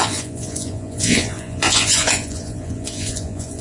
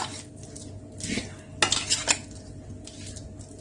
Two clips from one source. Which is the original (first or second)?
second